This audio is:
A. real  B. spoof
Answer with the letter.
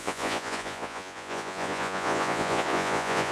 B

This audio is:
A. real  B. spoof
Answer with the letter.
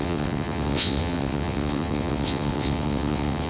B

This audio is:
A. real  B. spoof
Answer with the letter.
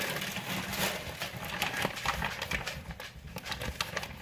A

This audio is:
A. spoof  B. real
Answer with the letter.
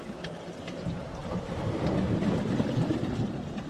B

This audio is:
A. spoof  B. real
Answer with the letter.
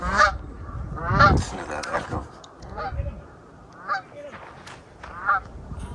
B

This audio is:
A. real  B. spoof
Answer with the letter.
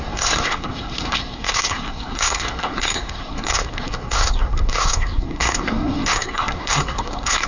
B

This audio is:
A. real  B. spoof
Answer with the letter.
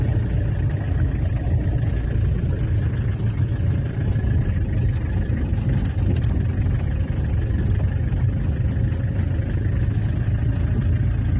A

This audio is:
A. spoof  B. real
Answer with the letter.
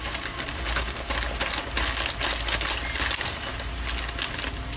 B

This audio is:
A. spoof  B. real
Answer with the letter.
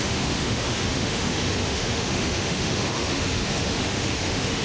A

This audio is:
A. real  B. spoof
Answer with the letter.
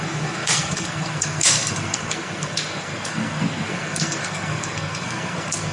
B